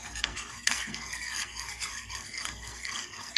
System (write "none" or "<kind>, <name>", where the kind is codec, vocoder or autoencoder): codec, SNAC